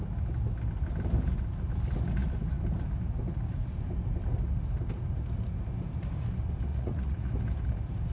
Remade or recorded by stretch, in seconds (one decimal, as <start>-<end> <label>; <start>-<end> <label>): 0.0-6.7 recorded; 6.7-7.3 remade; 7.3-8.1 recorded